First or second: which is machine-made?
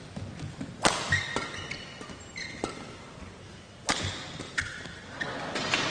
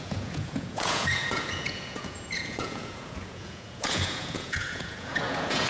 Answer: second